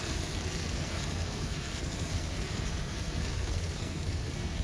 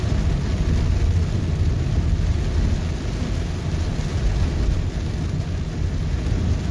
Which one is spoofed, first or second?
first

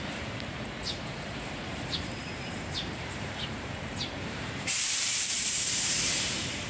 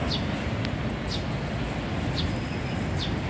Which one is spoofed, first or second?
first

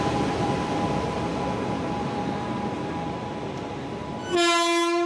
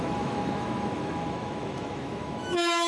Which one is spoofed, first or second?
second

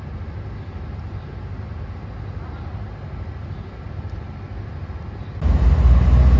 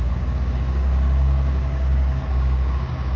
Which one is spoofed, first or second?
second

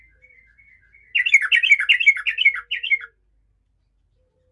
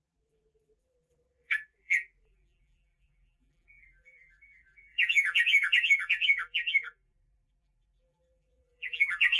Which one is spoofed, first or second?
second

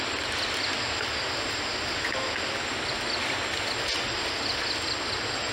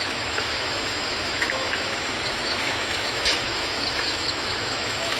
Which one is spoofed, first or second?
second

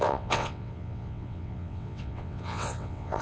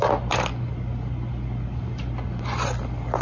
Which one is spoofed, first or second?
first